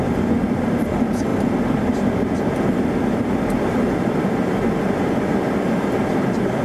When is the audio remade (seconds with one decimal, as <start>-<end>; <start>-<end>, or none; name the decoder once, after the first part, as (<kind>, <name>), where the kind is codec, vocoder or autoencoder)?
none